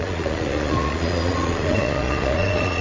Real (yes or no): no